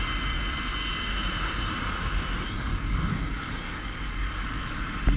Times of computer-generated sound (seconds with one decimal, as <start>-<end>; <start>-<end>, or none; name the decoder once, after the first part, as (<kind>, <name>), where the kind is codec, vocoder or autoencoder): 2.7-4.8 (codec, DAC)